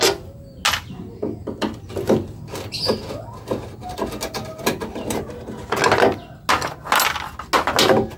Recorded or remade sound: recorded